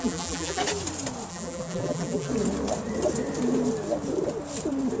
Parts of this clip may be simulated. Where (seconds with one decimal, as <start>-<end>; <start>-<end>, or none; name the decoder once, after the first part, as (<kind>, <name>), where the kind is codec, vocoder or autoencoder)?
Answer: 0.0-0.6 (vocoder, BigVGAN v2); 1.3-2.3